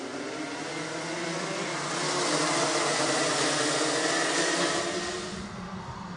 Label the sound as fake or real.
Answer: real